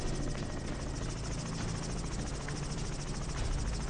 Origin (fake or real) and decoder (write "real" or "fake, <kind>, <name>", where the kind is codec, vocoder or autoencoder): real